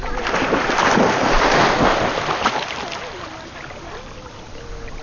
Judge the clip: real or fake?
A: real